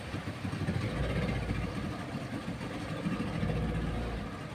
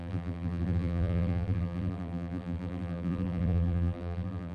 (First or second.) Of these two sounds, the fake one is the second